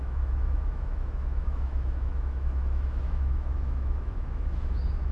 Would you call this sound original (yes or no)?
no